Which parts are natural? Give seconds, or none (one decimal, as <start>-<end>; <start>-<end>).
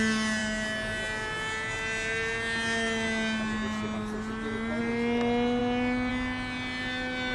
0.0-7.3